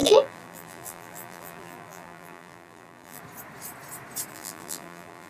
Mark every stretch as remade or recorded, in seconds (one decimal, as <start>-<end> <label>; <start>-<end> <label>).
0.0-3.2 remade; 3.2-4.3 recorded; 4.3-5.3 remade